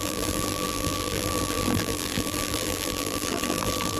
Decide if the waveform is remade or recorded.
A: remade